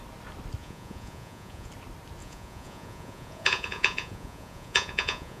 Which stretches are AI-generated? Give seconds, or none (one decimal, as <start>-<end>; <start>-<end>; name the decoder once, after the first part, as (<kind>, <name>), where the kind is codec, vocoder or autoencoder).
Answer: 0.6-1.7 (vocoder, Vocos); 2.2-5.4